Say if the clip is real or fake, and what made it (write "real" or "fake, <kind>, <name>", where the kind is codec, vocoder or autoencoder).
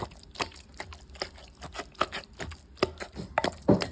real